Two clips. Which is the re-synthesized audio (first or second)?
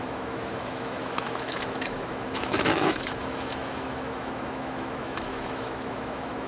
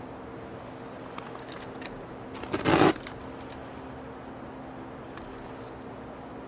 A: first